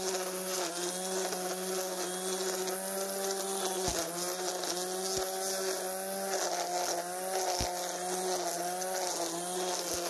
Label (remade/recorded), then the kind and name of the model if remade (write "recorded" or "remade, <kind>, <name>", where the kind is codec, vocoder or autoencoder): recorded